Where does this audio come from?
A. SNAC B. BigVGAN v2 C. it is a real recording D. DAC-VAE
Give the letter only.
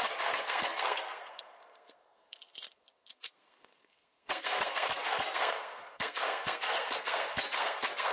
A